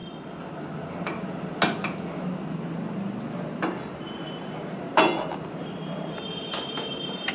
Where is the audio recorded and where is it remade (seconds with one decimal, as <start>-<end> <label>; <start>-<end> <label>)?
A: 0.0-4.0 recorded; 4.0-4.9 remade; 4.9-5.6 recorded; 5.6-7.3 remade